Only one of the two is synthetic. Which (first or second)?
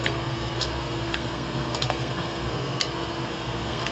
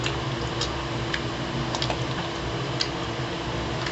first